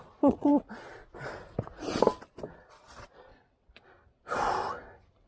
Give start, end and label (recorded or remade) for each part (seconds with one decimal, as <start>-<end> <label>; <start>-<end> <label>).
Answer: 0.0-0.5 remade; 0.5-2.5 recorded; 2.5-3.3 remade; 3.3-5.3 recorded